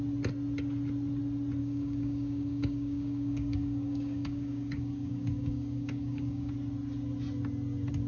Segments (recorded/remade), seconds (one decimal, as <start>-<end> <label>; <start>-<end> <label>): 0.0-1.6 recorded; 1.6-6.5 remade; 6.5-8.1 recorded